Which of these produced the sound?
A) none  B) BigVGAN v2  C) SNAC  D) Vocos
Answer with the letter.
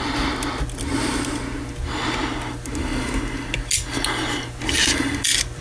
A